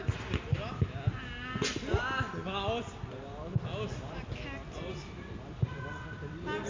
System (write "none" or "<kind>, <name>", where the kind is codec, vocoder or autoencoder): none